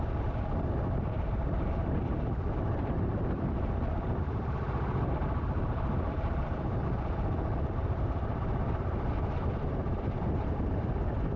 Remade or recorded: remade